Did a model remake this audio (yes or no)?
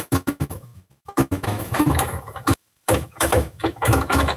yes